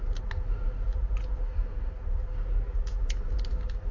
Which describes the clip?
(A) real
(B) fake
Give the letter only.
A